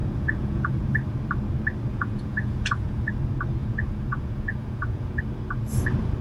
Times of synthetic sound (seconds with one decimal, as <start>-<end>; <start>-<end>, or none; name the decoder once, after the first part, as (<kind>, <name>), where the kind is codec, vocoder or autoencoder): 0.0-0.8 (vocoder, Vocos); 1.9-3.1; 3.6-5.2